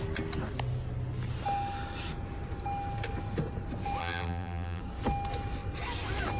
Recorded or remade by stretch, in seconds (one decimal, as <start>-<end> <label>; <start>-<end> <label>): 0.0-4.0 recorded; 4.0-4.8 remade; 4.8-6.4 recorded